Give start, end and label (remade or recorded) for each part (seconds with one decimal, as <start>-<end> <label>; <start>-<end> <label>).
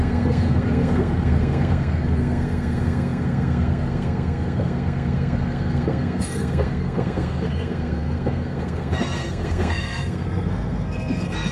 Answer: 0.0-11.5 remade